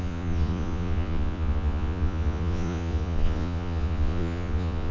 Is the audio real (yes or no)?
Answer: no